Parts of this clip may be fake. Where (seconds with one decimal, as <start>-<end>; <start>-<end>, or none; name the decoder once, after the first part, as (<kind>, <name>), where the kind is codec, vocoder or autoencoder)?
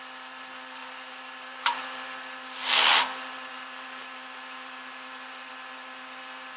0.8-1.8 (vocoder, BigVGAN v2); 3.5-5.5